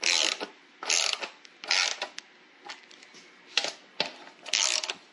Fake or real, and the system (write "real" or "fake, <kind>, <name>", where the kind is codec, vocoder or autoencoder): real